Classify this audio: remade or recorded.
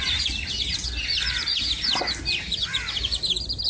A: recorded